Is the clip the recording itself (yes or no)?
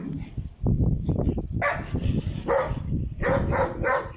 yes